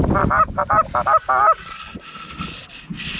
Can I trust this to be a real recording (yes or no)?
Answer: yes